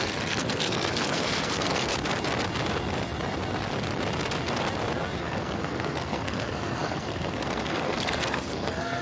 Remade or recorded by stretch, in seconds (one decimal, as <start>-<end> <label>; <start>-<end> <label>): 0.0-1.9 remade; 1.9-5.2 recorded; 5.2-9.0 remade